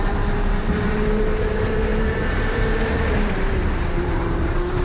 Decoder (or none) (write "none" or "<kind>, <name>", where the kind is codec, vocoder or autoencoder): vocoder, BigVGAN v2